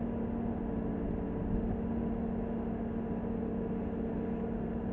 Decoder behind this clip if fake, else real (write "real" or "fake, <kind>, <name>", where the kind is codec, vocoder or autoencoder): real